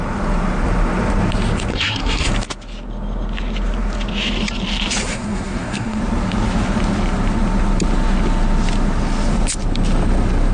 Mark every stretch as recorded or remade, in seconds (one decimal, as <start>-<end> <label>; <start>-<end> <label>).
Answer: 0.0-1.7 recorded; 1.7-2.3 remade; 2.3-5.0 recorded; 5.0-6.0 remade; 6.0-10.5 recorded